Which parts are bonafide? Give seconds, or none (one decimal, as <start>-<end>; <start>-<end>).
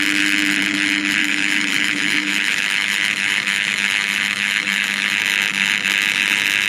0.0-1.2; 5.2-6.7